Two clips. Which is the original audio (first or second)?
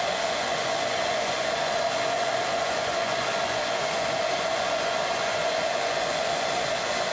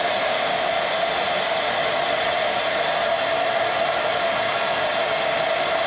second